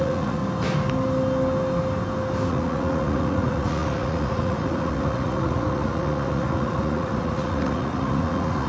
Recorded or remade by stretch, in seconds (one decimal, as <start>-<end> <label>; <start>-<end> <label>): 0.0-0.4 remade; 0.4-2.5 recorded; 2.5-8.7 remade